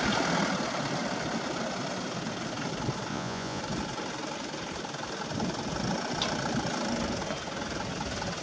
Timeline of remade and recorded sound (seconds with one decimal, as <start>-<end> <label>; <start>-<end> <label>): 0.0-3.1 recorded; 3.1-3.6 remade; 3.6-8.4 recorded